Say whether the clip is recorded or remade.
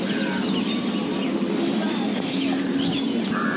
recorded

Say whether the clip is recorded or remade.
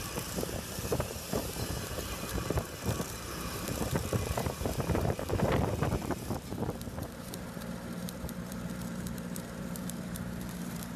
remade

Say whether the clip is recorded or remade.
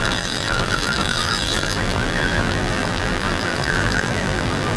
remade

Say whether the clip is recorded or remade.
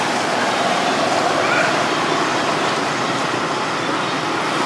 remade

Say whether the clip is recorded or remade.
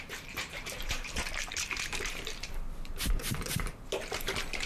remade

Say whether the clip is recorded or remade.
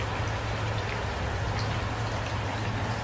recorded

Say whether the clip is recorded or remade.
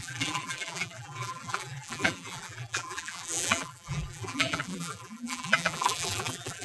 remade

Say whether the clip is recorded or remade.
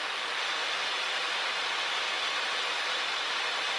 recorded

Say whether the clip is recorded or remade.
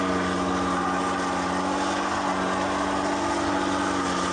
recorded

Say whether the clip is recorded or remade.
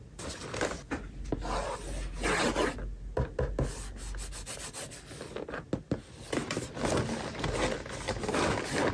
recorded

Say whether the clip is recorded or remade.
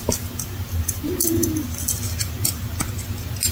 recorded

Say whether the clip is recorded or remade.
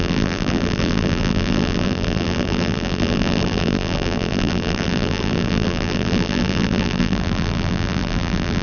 remade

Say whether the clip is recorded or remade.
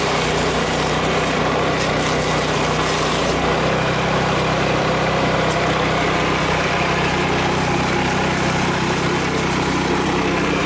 remade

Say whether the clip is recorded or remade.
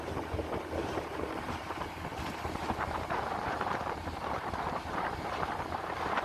remade